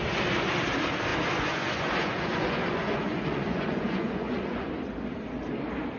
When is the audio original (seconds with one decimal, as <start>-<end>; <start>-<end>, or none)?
0.0-1.1; 4.7-6.0